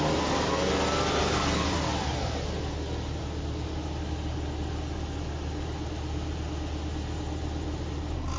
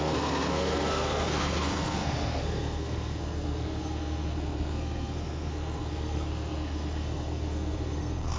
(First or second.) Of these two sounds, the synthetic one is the second